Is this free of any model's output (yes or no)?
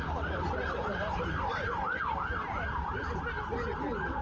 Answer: yes